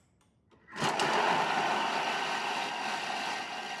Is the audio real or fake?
real